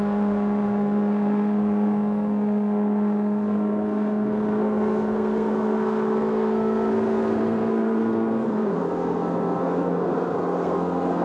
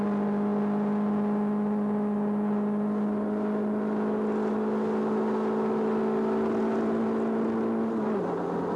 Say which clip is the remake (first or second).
first